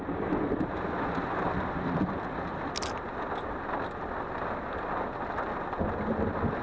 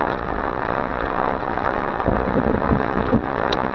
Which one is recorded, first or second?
first